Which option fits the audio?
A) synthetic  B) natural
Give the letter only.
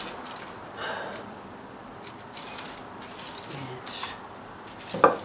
B